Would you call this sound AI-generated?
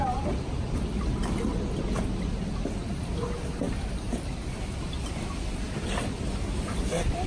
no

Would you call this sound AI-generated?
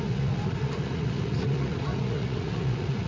yes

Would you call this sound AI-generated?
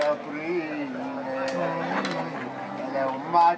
no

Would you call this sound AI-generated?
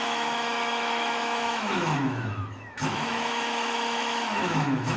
yes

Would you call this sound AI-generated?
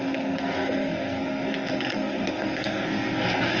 yes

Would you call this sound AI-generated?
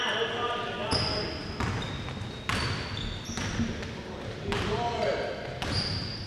no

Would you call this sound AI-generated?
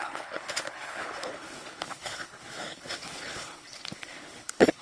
yes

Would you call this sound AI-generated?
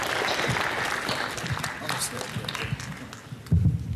no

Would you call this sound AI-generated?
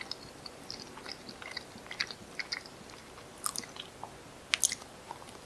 no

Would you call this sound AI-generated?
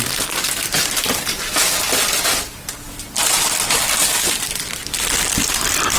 no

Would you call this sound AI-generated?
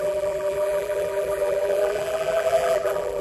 yes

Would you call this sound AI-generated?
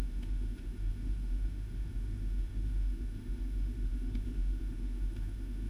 yes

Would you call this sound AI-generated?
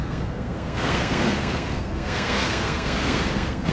yes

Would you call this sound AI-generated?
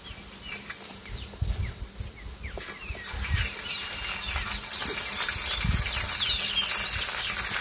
no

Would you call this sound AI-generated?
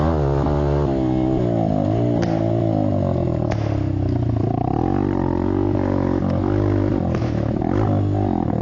no